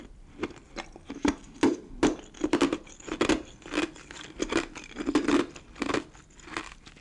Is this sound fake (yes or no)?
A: no